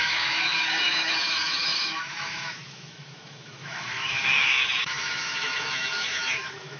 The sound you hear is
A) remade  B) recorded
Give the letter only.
A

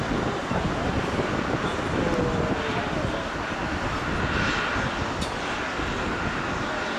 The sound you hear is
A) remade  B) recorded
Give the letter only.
B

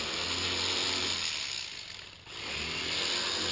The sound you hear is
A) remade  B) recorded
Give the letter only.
B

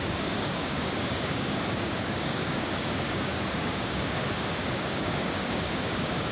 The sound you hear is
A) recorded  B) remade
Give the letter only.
B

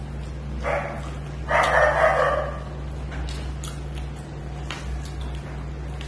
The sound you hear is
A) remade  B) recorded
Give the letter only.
B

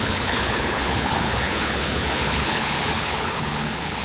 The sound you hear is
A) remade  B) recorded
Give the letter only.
A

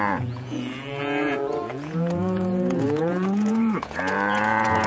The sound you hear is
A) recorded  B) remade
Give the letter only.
B